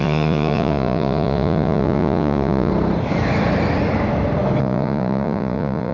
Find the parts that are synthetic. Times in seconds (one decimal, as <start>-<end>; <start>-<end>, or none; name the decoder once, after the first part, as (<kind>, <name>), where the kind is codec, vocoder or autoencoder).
0.0-2.7 (vocoder, Vocos); 4.6-5.9